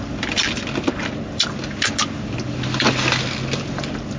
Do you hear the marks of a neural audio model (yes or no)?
no